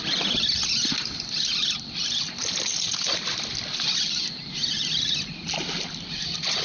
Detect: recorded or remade recorded